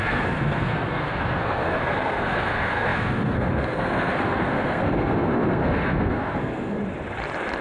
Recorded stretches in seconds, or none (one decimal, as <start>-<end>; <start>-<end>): 6.8-7.6